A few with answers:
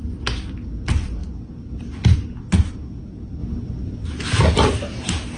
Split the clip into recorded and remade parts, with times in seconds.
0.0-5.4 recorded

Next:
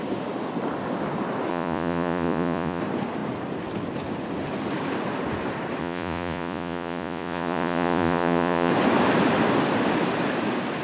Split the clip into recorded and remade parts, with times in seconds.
0.0-1.5 recorded; 1.5-2.8 remade; 2.8-5.8 recorded; 5.8-8.7 remade; 8.7-10.8 recorded